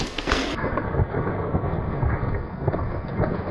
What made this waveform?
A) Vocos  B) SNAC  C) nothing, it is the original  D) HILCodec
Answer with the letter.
B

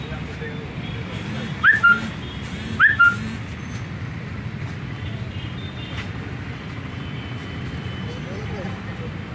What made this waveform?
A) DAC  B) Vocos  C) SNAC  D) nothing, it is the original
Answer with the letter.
D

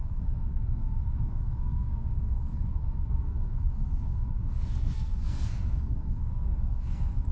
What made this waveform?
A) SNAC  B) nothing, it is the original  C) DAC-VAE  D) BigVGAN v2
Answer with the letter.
A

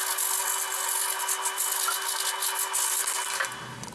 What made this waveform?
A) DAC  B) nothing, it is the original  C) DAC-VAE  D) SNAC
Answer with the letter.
B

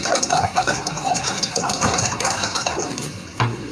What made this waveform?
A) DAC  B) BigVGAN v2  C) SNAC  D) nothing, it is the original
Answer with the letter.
C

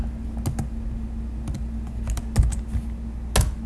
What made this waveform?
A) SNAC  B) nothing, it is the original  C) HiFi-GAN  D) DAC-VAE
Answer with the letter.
B